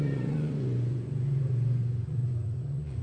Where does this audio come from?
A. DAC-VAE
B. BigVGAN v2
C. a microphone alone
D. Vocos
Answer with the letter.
D